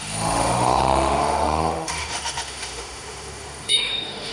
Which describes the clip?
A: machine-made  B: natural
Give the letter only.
A